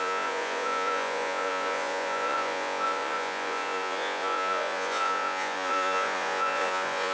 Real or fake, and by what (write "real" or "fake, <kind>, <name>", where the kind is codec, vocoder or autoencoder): fake, vocoder, Vocos